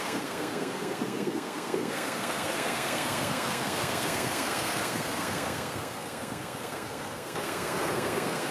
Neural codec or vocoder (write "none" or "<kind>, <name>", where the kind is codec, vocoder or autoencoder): codec, SNAC